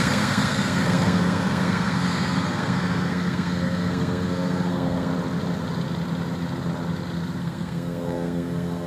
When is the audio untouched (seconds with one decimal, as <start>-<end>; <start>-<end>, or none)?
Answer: 5.1-7.4